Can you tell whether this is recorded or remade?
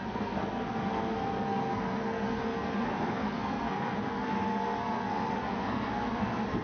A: remade